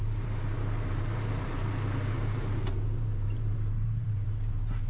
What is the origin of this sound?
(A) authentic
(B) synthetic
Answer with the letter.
B